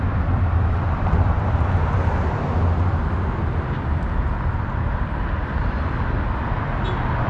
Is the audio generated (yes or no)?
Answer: no